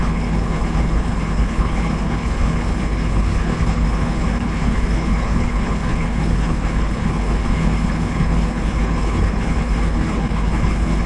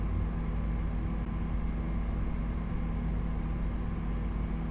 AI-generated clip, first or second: first